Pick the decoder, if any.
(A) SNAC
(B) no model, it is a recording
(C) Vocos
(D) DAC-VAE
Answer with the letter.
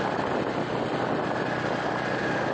B